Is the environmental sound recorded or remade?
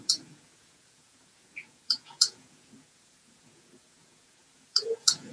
remade